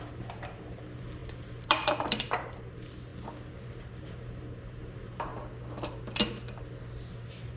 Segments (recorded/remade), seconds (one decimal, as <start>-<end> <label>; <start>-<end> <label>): 0.0-3.1 remade; 3.1-3.9 recorded; 3.9-5.3 remade; 5.3-7.1 recorded; 7.1-7.6 remade